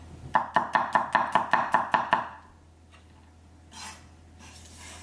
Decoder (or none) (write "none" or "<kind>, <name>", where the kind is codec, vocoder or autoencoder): none